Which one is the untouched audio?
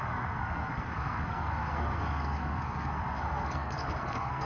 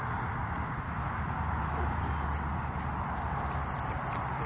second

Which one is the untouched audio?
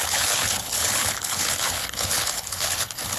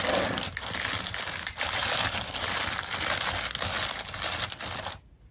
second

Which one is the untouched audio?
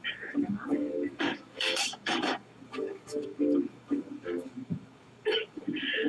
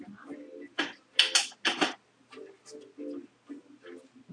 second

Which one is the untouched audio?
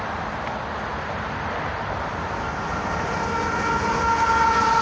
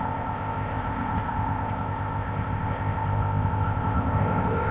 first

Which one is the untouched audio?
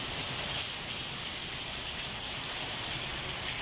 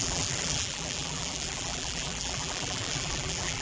first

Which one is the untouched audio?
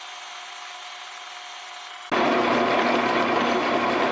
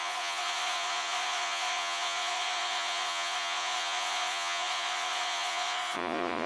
first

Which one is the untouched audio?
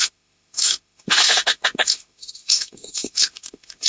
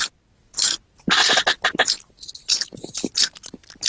second